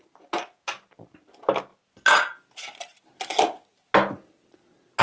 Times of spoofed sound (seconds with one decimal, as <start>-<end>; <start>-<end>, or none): none